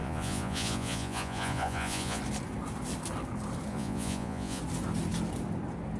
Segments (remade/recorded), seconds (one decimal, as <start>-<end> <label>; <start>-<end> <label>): 0.0-2.2 remade; 2.2-3.7 recorded; 3.7-4.6 remade; 4.6-6.0 recorded